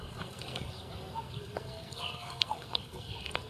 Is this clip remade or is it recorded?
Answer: remade